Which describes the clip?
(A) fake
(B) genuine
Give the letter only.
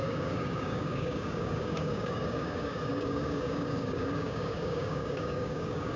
A